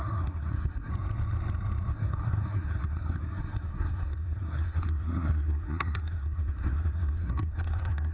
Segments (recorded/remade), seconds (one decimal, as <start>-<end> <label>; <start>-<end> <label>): 0.0-0.9 remade; 0.9-1.9 recorded; 1.9-8.1 remade